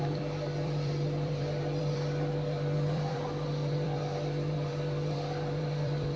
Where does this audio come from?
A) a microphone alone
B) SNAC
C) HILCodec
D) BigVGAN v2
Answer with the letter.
D